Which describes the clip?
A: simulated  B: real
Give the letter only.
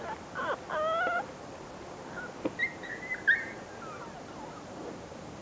B